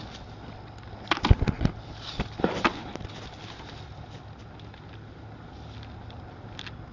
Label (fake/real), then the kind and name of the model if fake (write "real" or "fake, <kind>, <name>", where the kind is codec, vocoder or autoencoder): real